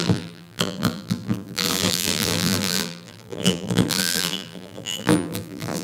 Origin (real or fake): fake